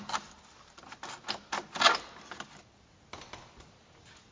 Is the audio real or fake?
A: real